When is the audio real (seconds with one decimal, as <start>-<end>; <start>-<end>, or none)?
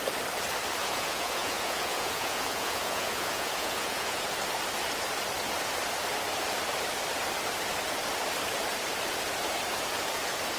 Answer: 0.0-0.8; 4.2-10.6